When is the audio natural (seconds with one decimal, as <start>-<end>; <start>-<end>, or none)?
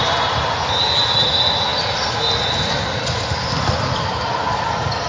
0.0-5.1